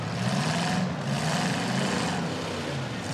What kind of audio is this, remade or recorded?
recorded